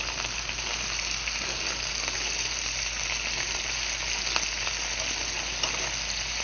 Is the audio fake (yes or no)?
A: no